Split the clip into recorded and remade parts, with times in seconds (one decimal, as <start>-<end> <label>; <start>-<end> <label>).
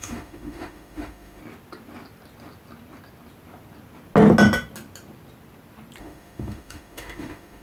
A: 0.0-1.4 remade; 1.4-6.0 recorded; 6.0-7.6 remade